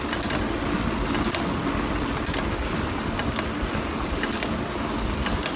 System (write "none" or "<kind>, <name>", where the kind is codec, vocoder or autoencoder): none